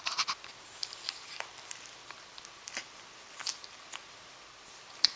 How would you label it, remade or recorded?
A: recorded